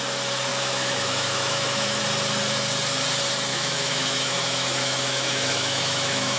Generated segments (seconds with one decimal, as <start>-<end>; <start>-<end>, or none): 0.5-2.0; 3.5-6.4